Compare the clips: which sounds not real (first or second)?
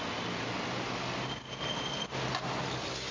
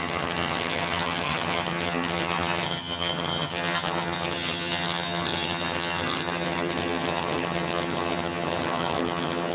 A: second